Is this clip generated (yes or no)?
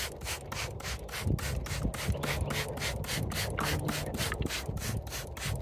no